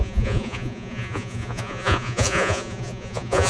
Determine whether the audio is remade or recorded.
remade